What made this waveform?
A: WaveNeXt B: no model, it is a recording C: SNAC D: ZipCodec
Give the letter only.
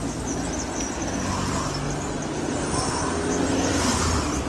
B